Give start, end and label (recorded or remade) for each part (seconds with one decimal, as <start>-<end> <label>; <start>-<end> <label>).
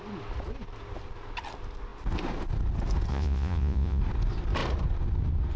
0.0-3.1 recorded; 3.1-4.0 remade; 4.0-5.6 recorded